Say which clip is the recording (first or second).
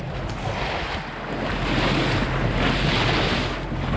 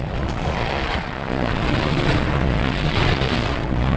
first